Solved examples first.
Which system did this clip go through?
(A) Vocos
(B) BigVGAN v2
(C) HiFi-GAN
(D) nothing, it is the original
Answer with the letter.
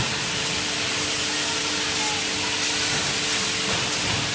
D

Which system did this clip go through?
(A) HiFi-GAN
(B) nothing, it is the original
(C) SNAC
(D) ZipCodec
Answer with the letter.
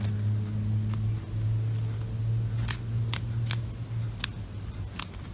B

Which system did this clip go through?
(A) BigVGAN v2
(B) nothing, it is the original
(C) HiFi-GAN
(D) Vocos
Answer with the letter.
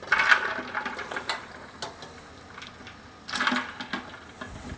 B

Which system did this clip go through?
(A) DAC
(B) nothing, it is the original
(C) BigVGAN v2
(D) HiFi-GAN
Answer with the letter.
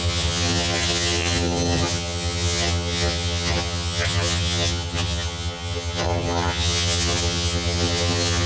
D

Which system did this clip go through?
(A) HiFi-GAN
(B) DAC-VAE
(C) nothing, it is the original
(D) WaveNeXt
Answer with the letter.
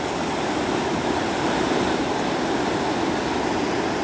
C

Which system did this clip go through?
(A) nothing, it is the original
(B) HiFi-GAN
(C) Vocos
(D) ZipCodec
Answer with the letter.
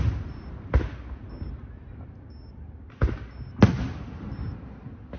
A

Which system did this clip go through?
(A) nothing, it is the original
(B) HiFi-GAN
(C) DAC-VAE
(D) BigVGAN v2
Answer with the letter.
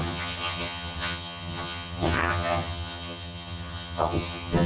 B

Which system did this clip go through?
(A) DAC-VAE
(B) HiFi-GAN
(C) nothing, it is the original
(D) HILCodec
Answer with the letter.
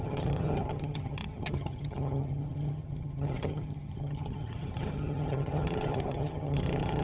B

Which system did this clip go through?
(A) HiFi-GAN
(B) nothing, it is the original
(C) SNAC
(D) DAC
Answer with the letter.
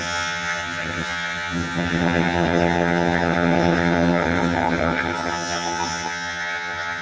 A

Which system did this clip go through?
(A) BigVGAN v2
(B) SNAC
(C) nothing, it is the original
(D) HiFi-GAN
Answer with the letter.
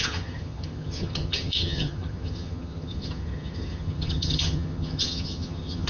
D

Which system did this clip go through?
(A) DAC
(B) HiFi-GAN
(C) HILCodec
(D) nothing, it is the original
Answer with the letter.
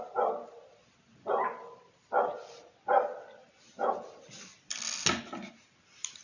D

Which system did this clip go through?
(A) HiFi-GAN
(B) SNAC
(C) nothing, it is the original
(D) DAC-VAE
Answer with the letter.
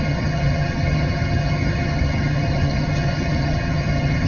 A